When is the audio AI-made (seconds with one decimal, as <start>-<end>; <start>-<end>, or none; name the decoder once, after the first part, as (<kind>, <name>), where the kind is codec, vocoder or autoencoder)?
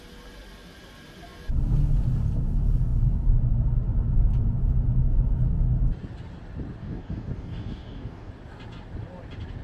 6.8-8.3 (codec, DAC)